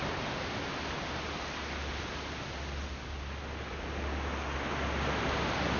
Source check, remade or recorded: recorded